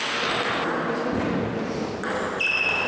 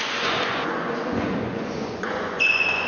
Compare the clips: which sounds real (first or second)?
first